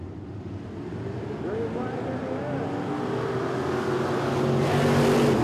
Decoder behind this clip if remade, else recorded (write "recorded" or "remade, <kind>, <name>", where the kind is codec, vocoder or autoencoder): recorded